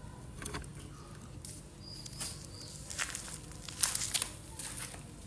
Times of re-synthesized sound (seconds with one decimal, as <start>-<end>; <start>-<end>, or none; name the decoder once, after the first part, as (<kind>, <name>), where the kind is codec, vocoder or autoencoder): none